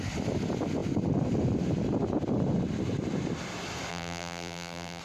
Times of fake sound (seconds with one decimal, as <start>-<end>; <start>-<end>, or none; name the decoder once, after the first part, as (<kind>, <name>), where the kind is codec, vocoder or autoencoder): 3.9-5.0 (vocoder, BigVGAN v2)